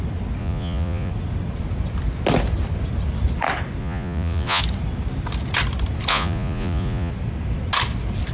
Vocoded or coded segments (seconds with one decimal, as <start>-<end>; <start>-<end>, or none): 0.4-1.1; 3.8-4.6; 6.1-7.1